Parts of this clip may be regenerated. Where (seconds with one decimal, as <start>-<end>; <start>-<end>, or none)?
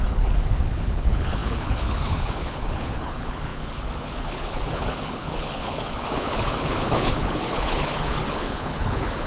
0.0-9.3